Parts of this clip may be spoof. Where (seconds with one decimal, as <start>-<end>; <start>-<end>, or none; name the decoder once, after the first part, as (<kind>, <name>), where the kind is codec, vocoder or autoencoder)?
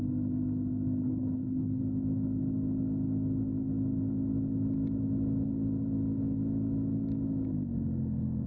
1.0-1.8 (codec, HILCodec)